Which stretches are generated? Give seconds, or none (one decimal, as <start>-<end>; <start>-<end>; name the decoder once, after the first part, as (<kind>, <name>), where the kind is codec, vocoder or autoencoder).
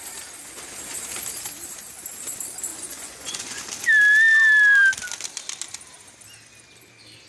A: 2.7-3.6 (vocoder, Vocos)